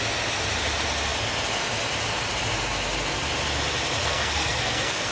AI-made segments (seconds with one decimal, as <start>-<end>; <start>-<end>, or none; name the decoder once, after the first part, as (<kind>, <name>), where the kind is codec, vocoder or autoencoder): 4.0-5.1 (codec, SNAC)